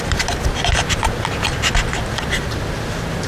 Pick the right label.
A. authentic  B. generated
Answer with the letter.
A